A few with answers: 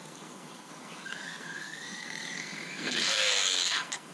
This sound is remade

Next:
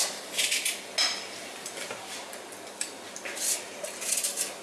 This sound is recorded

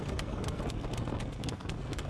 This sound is remade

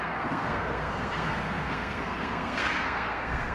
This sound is remade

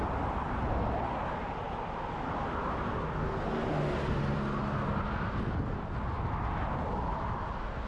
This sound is recorded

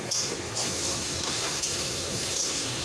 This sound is remade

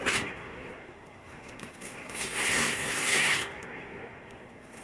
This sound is remade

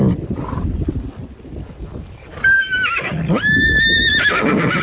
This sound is recorded